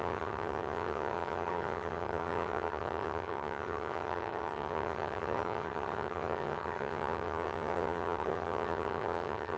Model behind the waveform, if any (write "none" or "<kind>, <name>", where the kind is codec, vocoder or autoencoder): vocoder, HiFi-GAN